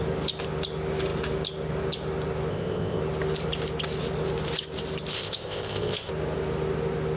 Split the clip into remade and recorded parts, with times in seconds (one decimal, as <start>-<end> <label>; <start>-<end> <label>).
0.0-2.5 recorded; 2.5-3.0 remade; 3.0-5.1 recorded; 5.1-6.1 remade; 6.1-7.2 recorded